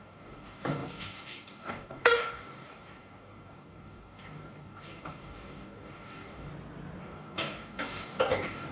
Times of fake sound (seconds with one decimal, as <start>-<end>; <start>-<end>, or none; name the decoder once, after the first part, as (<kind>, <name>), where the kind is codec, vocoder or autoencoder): 0.0-6.5 (codec, DAC); 7.0-8.7